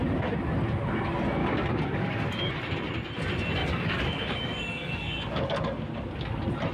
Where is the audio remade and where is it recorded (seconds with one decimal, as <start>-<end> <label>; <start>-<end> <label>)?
0.0-1.4 recorded; 1.4-2.5 remade; 2.5-3.6 recorded; 3.6-5.8 remade; 5.8-6.7 recorded